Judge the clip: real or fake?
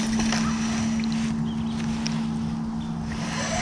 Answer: real